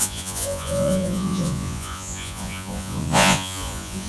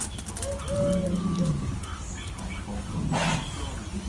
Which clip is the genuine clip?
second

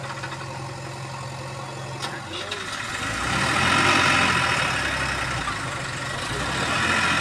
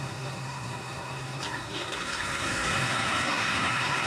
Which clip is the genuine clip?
first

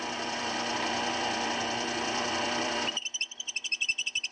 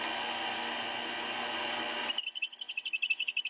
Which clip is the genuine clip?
second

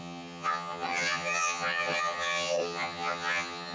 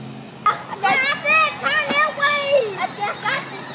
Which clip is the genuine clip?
second